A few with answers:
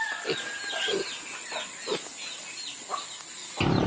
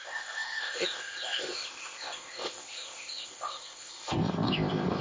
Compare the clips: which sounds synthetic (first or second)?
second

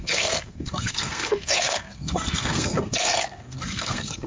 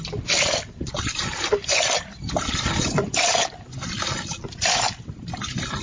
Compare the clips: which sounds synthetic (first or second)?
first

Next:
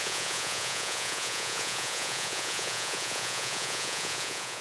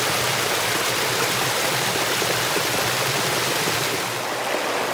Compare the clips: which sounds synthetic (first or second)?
first